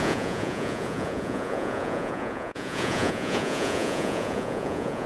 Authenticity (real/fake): fake